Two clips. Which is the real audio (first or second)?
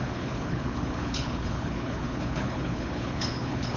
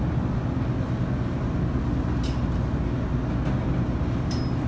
second